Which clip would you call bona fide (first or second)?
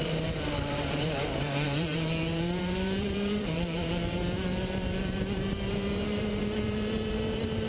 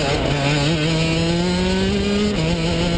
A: second